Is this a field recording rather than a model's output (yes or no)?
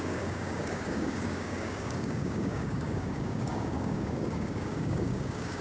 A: no